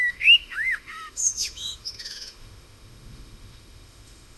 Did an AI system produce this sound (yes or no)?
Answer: yes